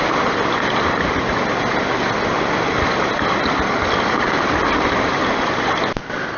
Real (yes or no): yes